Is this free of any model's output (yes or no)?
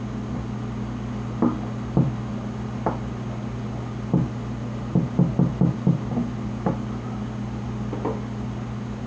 yes